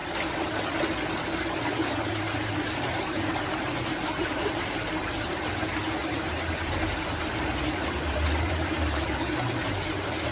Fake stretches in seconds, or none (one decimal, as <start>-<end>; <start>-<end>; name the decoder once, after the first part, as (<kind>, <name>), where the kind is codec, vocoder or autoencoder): 2.1-5.5 (vocoder, BigVGAN v2); 7.4-10.3

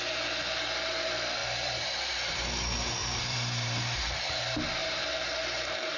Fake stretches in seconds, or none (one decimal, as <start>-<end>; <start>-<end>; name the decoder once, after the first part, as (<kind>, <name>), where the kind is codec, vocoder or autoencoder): 1.4-2.4 (vocoder, BigVGAN v2); 3.0-4.2; 4.8-6.0

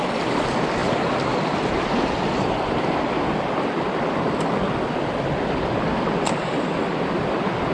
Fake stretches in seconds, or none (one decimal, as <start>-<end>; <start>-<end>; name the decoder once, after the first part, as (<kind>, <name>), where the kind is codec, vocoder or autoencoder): none

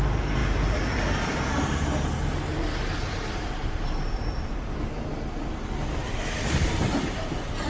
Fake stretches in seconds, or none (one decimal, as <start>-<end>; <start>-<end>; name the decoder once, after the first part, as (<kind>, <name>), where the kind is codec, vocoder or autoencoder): 0.4-1.5 (vocoder, BigVGAN v2); 3.0-5.1; 6.6-7.2

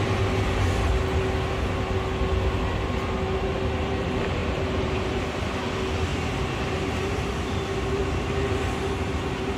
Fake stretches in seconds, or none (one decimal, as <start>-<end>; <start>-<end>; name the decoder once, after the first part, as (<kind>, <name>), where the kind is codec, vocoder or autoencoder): 4.4-5.2 (vocoder, BigVGAN v2); 6.1-7.3; 8.0-9.6

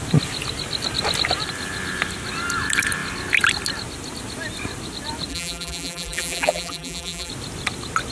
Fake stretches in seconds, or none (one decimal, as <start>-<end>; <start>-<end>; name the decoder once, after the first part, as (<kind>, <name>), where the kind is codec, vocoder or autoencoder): 5.3-7.3 (vocoder, BigVGAN v2)